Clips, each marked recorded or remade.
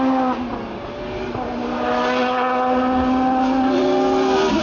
recorded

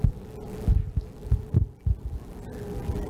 recorded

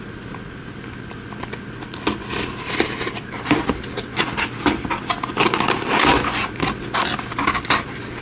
recorded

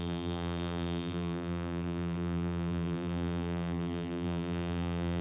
remade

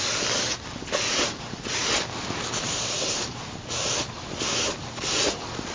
recorded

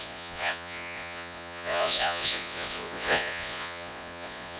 remade